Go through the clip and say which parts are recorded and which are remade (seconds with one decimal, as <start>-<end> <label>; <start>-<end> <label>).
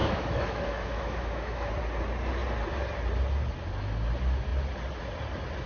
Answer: 0.0-1.7 remade; 1.7-5.7 recorded